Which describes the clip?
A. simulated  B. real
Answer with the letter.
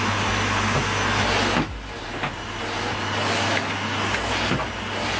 B